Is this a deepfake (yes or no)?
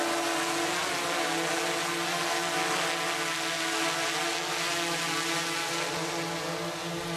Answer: no